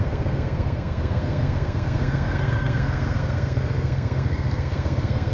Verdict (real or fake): fake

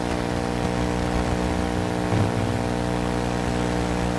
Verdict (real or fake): real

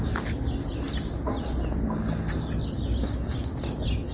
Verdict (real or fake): real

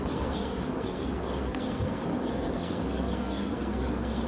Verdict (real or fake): fake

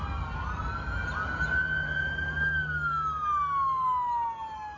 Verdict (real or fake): real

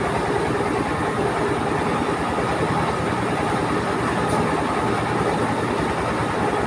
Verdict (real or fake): real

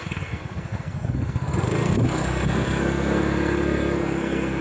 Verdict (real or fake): fake